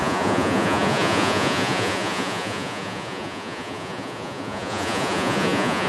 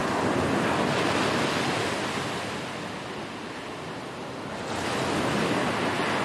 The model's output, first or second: first